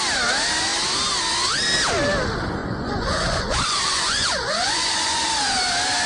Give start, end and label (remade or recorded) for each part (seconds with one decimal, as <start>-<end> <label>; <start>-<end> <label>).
0.0-2.6 recorded; 2.6-5.3 remade; 5.3-6.1 recorded